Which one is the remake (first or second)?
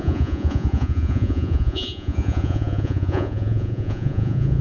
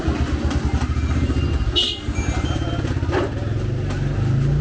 first